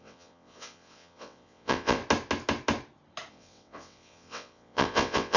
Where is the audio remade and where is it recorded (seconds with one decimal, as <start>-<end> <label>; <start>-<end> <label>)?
0.0-2.0 remade; 2.0-3.3 recorded; 3.3-5.4 remade